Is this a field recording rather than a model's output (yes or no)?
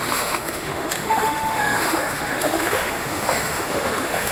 no